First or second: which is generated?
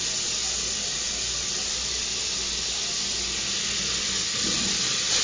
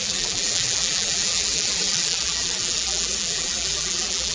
second